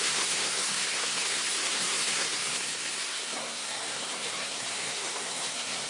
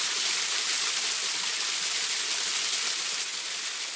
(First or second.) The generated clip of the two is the first